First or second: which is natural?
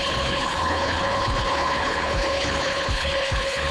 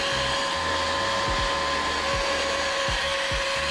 second